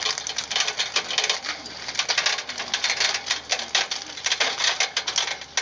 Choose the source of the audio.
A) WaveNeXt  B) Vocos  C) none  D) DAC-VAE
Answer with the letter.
C